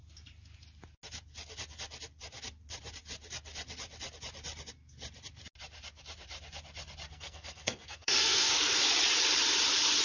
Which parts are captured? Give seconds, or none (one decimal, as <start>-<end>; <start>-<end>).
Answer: 0.0-7.1; 8.7-10.0